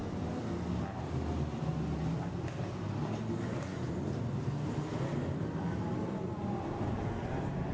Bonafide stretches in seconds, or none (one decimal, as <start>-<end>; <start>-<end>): none